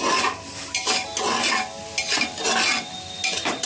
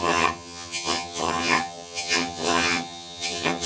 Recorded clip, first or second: first